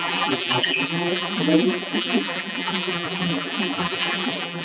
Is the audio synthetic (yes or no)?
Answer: yes